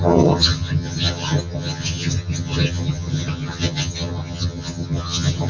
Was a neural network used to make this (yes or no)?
yes